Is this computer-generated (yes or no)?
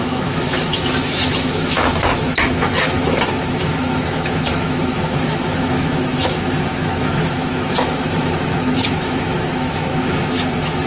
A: yes